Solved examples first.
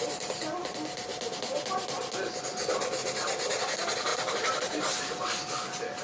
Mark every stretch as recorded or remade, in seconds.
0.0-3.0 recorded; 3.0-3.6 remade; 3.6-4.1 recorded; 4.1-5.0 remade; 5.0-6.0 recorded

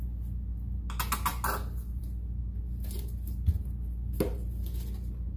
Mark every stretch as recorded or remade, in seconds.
0.0-5.4 recorded

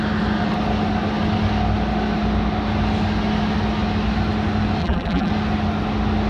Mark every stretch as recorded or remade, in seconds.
0.0-4.8 recorded; 4.8-5.3 remade; 5.3-6.3 recorded

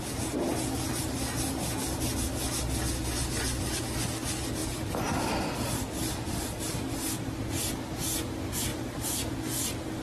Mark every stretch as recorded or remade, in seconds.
0.0-4.6 recorded; 4.6-6.6 remade; 6.6-8.7 recorded; 8.7-9.3 remade; 9.3-10.0 recorded

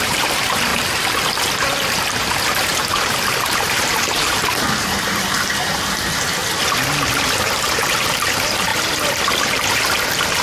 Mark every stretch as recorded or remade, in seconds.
0.0-0.7 remade; 0.7-2.0 recorded; 2.0-6.4 remade; 6.4-7.4 recorded; 7.4-8.7 remade; 8.7-9.6 recorded; 9.6-10.4 remade

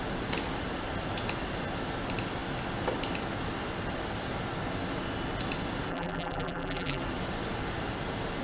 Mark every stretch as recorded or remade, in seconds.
0.0-5.9 recorded; 5.9-7.0 remade; 7.0-8.4 recorded

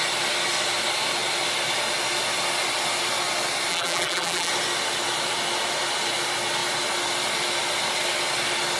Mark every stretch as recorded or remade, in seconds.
0.0-3.7 recorded; 3.7-4.5 remade; 4.5-8.8 recorded